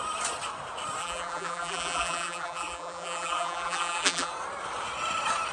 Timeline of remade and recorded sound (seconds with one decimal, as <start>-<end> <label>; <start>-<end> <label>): 0.0-1.0 recorded; 1.0-4.3 remade; 4.3-5.5 recorded